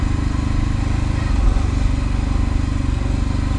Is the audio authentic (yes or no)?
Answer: yes